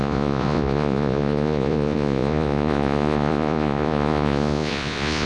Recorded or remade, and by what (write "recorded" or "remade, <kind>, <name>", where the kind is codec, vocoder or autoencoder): remade, vocoder, Vocos